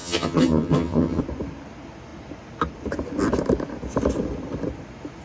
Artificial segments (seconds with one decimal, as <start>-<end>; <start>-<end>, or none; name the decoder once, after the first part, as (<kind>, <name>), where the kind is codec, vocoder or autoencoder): 0.0-1.2 (vocoder, HiFi-GAN)

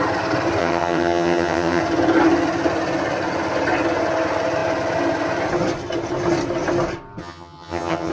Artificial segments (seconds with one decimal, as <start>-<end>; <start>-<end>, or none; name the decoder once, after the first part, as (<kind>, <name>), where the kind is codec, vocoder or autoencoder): 0.6-1.8 (vocoder, HiFi-GAN); 7.2-8.1

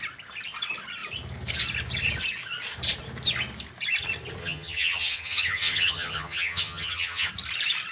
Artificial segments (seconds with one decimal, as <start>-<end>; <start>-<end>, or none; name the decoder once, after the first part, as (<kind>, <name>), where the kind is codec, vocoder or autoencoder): 4.4-7.3 (vocoder, HiFi-GAN)

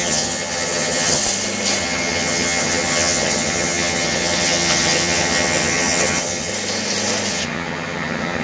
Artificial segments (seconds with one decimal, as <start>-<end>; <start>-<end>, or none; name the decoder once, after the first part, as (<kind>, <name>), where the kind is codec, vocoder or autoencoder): 0.0-1.2 (vocoder, HiFi-GAN); 1.8-6.5; 7.3-8.4

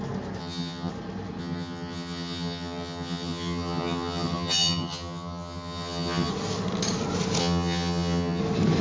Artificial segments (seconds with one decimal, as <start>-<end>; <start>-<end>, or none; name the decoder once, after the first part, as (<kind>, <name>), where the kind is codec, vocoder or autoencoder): 0.4-0.9 (vocoder, HiFi-GAN); 1.4-6.3; 7.4-8.4

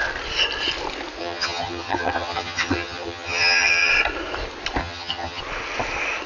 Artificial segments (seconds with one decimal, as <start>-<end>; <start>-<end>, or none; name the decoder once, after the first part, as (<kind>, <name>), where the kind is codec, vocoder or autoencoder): 1.2-3.9 (vocoder, HiFi-GAN); 4.8-5.4

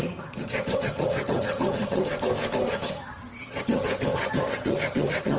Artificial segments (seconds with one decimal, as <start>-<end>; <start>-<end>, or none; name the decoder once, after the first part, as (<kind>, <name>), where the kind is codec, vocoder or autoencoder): 0.0-2.0 (vocoder, HiFi-GAN); 2.7-5.4

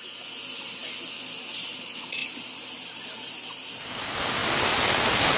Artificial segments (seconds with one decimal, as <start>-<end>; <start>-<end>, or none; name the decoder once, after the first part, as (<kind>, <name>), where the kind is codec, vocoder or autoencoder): none